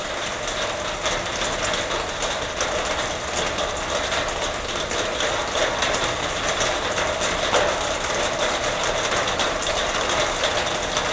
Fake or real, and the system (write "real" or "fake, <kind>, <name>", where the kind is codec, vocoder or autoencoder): real